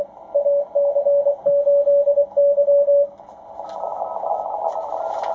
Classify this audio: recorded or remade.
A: recorded